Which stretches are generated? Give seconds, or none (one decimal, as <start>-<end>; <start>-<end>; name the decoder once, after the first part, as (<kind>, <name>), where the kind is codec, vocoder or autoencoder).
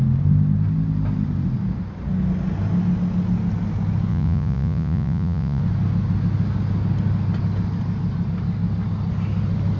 4.1-5.6 (vocoder, Vocos)